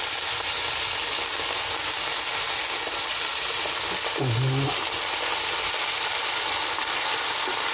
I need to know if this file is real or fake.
real